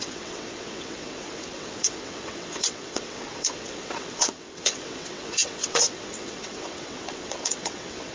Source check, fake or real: fake